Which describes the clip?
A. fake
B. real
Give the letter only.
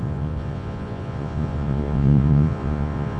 A